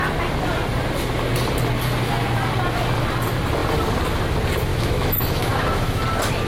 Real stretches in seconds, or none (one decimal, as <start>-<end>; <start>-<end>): 0.0-4.7; 6.0-6.5